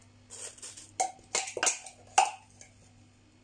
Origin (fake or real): real